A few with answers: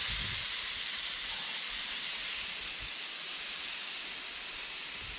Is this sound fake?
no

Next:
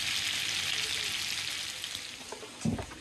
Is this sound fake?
no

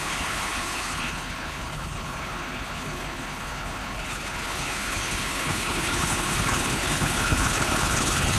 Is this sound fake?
yes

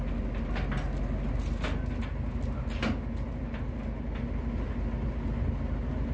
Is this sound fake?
no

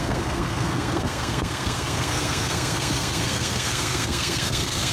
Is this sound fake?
yes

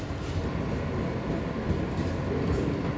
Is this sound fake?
no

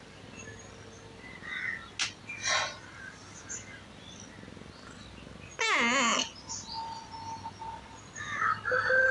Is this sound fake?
no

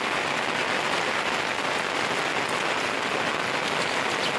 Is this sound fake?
no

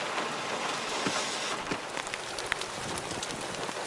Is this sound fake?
no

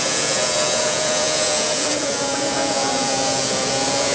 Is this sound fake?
yes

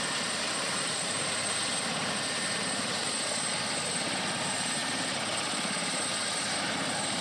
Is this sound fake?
yes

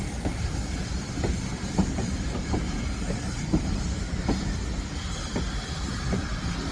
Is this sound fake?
no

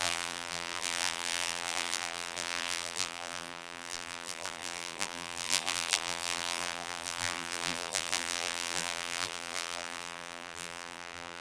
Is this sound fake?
yes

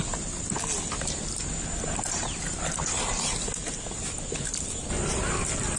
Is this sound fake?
no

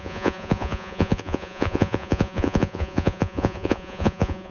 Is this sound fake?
yes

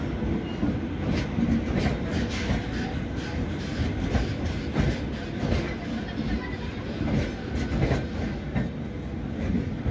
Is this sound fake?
no